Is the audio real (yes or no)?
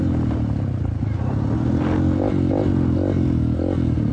yes